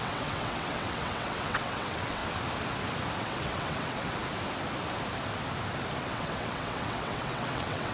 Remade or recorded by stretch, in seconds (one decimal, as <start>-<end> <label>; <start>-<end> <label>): 0.0-2.2 remade; 2.2-3.2 recorded; 3.2-4.2 remade; 4.2-6.0 recorded; 6.0-7.9 remade